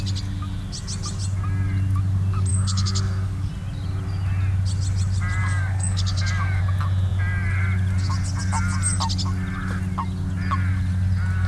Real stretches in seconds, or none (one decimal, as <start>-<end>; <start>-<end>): 0.0-2.5; 3.5-5.4; 6.6-11.5

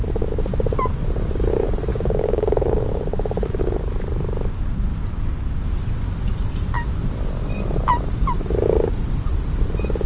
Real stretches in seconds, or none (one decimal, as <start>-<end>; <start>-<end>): 0.0-1.9; 2.8-10.1

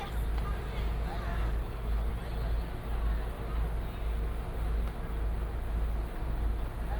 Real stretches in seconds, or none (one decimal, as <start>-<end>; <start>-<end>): 0.0-1.3; 2.1-7.0

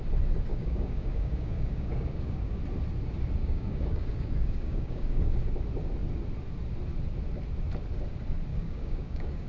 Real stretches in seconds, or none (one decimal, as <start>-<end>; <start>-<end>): 0.0-0.5; 2.6-3.4; 5.4-8.5